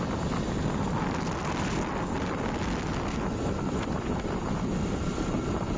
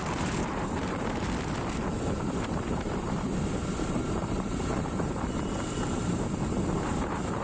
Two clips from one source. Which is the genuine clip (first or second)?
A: first